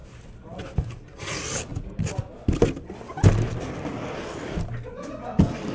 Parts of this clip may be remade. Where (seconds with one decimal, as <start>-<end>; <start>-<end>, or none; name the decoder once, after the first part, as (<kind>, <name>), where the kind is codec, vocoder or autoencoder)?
none